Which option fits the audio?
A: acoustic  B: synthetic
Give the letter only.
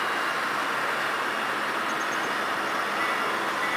A